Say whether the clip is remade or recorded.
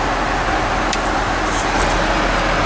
remade